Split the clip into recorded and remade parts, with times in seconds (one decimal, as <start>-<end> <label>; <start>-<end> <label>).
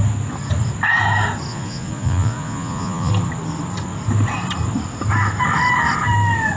0.0-1.5 recorded; 1.5-3.1 remade; 3.1-6.6 recorded